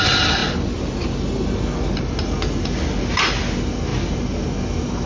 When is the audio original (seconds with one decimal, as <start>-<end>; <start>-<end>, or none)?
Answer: 0.0-5.1